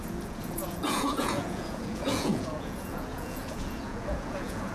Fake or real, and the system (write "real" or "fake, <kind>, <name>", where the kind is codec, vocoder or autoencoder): fake, vocoder, Vocos